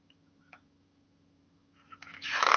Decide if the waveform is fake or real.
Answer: fake